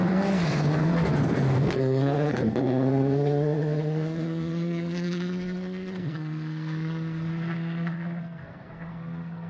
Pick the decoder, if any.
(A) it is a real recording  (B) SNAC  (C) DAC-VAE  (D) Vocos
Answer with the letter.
B